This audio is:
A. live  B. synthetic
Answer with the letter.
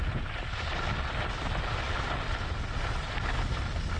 A